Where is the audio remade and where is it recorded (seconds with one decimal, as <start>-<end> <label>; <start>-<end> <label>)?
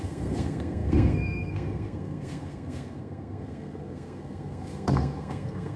0.0-5.8 remade